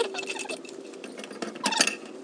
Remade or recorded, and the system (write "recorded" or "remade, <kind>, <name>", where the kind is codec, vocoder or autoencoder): recorded